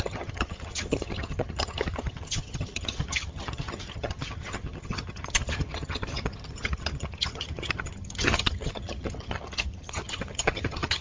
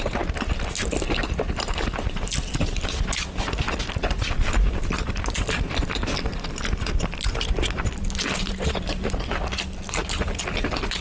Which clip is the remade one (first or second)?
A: first